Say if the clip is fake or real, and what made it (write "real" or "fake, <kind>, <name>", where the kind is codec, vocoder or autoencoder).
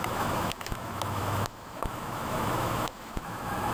fake, autoencoder, DAC-VAE